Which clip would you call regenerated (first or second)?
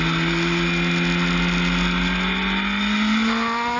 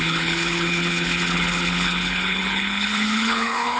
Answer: second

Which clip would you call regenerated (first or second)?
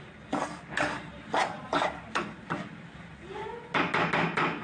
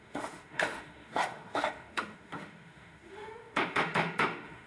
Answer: second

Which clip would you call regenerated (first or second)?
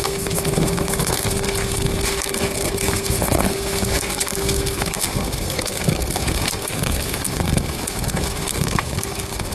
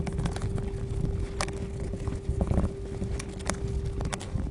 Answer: first